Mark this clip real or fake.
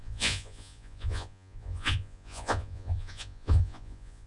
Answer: fake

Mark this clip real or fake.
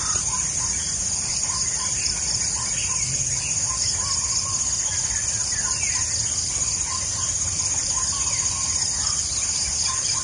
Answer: real